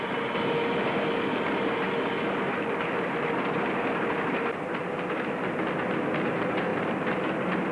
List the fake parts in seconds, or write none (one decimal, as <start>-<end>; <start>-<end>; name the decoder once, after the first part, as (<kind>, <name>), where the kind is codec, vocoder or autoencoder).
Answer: none